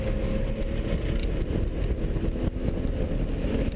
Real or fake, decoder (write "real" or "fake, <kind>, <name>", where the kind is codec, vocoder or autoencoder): real